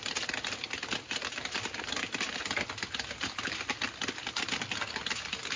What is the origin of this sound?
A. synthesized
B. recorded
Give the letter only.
B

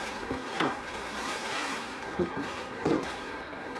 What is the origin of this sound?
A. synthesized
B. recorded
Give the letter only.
A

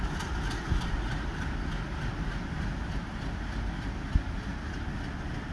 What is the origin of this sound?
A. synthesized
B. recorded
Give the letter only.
B